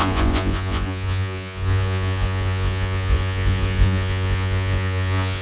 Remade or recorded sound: remade